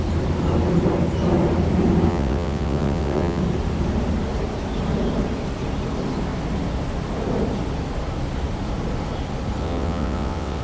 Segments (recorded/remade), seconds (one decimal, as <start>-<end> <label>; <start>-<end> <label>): 0.0-2.1 recorded; 2.1-3.4 remade; 3.4-9.6 recorded; 9.6-10.6 remade